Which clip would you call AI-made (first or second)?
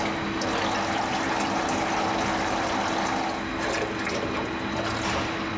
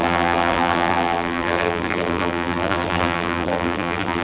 second